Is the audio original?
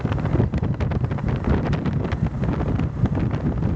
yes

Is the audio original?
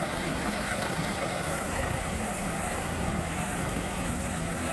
no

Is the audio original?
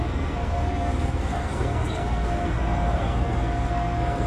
no